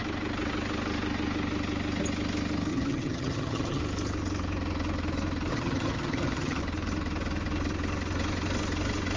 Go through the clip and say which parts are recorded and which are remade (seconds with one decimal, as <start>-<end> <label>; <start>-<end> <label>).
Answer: 0.0-2.7 recorded; 2.7-3.8 remade; 3.8-5.5 recorded; 5.5-6.6 remade; 6.6-9.2 recorded